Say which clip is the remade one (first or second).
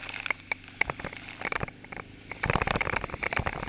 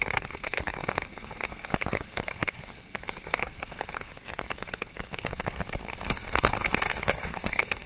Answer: second